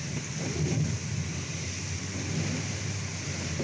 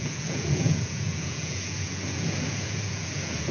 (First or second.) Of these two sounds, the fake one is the second